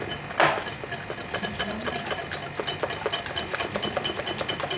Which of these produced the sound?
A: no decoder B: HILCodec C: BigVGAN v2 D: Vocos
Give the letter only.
A